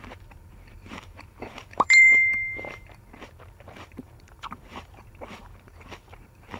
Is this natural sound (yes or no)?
no